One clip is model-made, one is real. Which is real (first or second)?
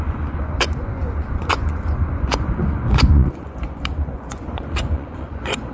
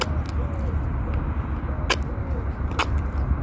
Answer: second